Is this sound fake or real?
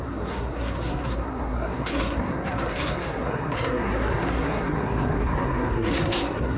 fake